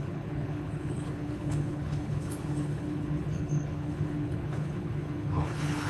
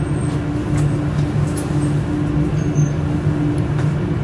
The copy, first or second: first